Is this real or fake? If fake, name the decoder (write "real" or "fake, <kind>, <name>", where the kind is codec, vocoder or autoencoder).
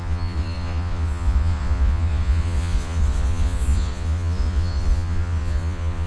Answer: fake, vocoder, Vocos